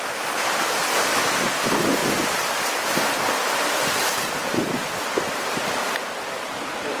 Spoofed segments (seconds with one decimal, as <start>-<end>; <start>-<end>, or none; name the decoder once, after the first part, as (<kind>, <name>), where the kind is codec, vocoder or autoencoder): none

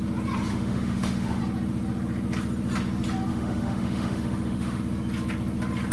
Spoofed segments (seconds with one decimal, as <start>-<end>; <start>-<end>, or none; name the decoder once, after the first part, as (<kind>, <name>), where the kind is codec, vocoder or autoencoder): 0.5-1.4 (autoencoder, DAC-VAE); 3.3-4.8

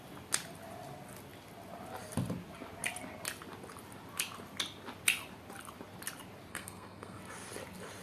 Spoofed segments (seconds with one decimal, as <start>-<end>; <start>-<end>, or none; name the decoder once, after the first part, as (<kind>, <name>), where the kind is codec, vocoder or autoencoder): 6.5-7.2 (codec, SNAC)

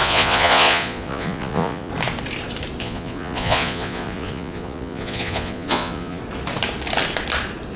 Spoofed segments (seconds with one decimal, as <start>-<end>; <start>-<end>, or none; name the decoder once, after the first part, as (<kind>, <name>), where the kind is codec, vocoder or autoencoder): 0.0-1.9 (vocoder, Vocos); 2.8-6.2

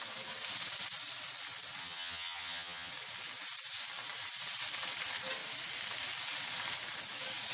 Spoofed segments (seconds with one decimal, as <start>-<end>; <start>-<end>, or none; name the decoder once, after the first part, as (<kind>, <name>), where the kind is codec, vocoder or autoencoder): 1.8-2.9 (vocoder, HiFi-GAN)

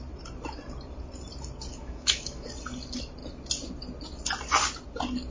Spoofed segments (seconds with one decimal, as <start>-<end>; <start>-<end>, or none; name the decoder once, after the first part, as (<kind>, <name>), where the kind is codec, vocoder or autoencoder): 1.7-2.5 (autoencoder, DAC-VAE)

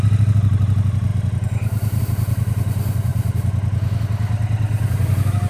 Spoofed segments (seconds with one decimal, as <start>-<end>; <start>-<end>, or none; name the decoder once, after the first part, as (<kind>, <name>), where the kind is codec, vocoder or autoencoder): none